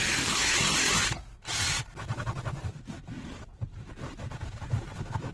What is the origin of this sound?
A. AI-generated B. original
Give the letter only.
B